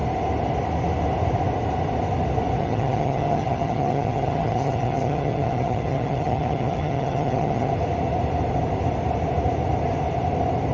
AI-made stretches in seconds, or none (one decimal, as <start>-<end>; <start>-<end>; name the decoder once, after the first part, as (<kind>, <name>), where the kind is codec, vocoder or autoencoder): 2.6-7.7 (vocoder, HiFi-GAN)